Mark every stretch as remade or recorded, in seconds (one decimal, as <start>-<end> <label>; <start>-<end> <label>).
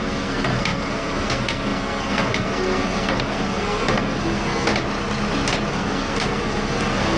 0.0-4.7 remade; 4.7-5.7 recorded; 5.7-7.2 remade